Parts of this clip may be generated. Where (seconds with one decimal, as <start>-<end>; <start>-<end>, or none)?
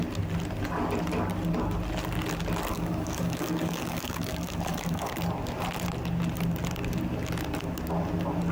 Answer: 2.7-5.1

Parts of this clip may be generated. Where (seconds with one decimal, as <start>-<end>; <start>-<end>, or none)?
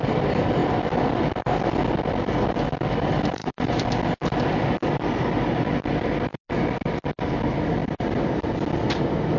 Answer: none